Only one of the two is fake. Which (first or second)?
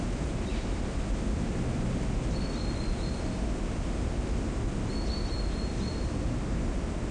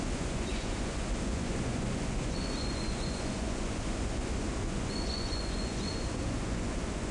second